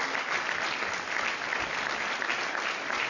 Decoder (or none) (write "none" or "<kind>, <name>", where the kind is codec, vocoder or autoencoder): none